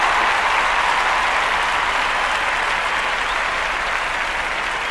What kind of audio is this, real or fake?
real